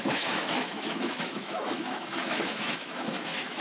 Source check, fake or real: fake